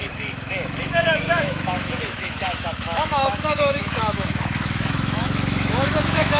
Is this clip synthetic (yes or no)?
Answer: yes